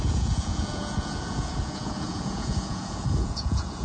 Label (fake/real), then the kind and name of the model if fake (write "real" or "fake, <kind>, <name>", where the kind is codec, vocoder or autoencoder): fake, vocoder, Vocos